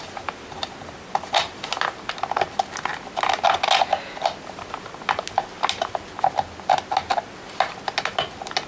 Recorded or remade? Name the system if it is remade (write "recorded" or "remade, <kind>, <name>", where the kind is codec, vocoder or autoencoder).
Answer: recorded